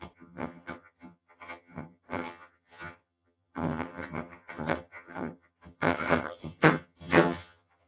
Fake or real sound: fake